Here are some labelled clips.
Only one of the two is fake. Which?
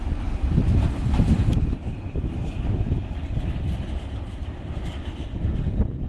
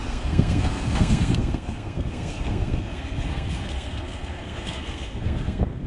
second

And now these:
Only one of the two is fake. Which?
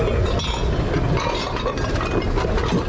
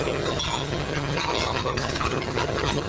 second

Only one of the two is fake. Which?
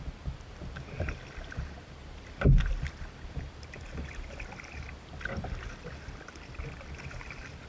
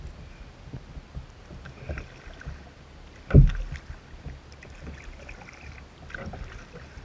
first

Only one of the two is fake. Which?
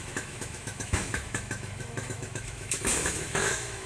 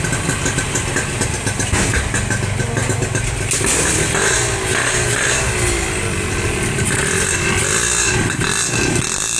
first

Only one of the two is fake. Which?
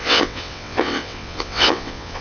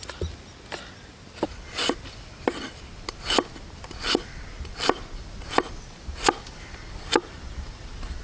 first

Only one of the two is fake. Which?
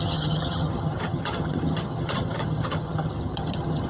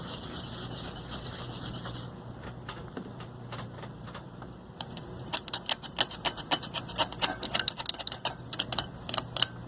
first